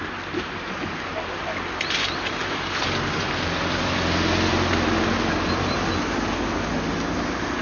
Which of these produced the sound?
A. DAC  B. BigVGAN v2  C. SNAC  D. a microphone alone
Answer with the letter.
D